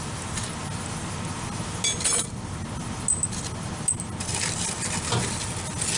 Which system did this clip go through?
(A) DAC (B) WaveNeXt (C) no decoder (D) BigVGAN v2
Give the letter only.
C